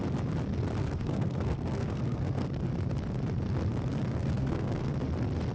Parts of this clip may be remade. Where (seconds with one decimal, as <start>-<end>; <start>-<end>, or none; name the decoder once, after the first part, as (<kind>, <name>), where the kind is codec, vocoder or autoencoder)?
0.8-2.5 (codec, SNAC); 4.2-4.9